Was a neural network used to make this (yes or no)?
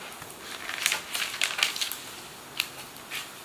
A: no